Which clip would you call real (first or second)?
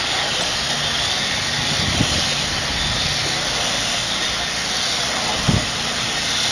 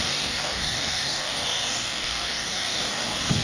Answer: first